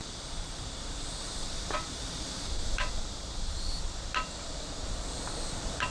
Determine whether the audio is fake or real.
fake